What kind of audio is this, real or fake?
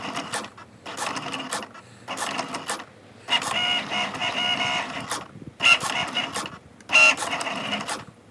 real